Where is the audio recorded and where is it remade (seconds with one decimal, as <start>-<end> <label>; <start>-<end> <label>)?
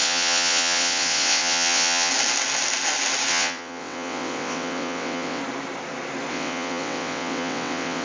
0.0-2.1 remade; 2.1-3.3 recorded; 3.3-5.4 remade; 5.4-6.3 recorded; 6.3-8.0 remade